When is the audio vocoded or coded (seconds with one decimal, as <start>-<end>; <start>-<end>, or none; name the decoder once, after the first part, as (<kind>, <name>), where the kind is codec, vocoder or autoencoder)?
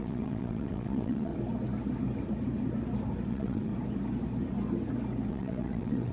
0.0-1.3 (vocoder, WaveNeXt); 3.3-3.7; 5.3-6.1